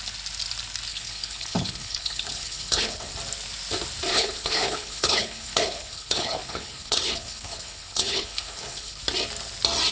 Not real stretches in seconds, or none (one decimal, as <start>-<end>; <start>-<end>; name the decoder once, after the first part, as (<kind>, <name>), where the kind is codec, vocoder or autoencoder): 0.9-3.1 (codec, HILCodec); 4.1-9.0